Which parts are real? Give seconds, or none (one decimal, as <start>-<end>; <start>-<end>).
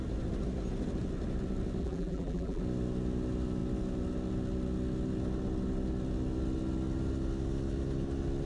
0.0-1.8; 2.6-8.5